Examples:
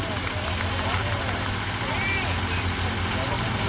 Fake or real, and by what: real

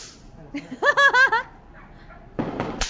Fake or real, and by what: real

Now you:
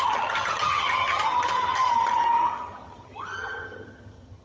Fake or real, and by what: fake, vocoder, HiFi-GAN